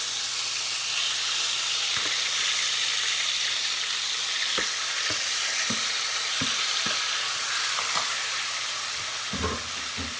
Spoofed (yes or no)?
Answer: no